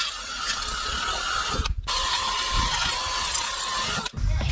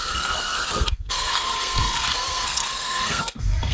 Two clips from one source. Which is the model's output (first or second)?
second